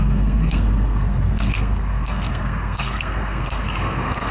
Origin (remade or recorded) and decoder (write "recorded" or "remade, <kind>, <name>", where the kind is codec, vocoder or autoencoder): remade, codec, SNAC